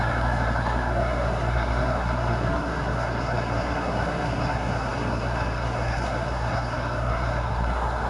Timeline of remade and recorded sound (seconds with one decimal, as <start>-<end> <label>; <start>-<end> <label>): 0.0-8.1 remade